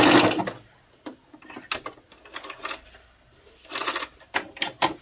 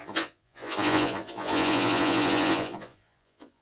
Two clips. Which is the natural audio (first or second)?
first